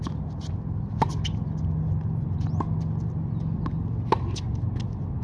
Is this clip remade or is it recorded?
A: recorded